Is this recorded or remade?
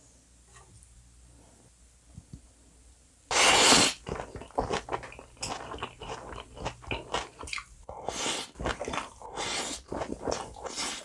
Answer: recorded